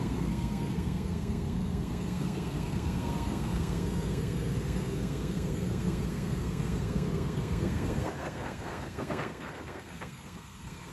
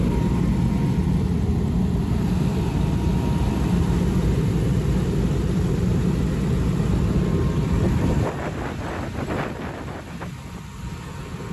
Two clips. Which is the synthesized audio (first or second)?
first